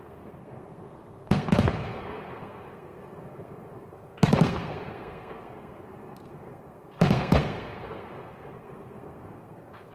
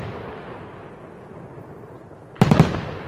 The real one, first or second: second